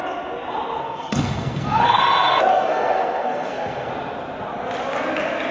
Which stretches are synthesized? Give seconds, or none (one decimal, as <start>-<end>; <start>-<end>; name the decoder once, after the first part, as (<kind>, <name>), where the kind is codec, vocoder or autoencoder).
0.8-2.0 (codec, SNAC); 2.5-3.9